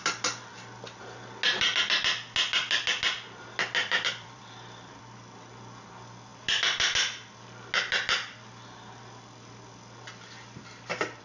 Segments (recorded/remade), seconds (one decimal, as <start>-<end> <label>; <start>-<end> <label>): 0.0-3.8 recorded; 3.8-5.0 remade; 5.0-11.2 recorded